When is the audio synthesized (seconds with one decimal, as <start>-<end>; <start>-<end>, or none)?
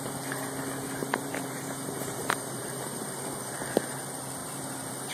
1.0-3.3; 4.4-5.1